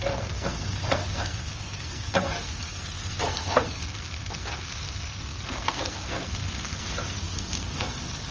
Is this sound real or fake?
fake